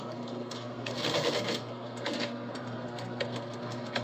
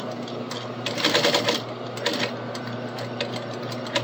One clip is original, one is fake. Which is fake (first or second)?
first